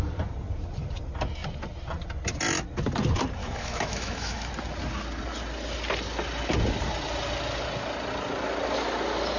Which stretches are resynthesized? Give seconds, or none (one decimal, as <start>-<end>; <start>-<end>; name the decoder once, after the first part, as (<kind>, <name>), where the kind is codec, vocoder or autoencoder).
3.4-4.5 (autoencoder, DAC-VAE)